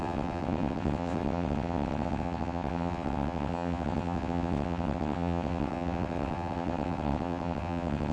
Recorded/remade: remade